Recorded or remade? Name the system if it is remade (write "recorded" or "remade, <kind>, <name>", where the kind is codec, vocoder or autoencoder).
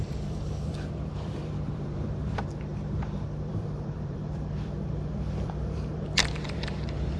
remade, vocoder, BigVGAN v2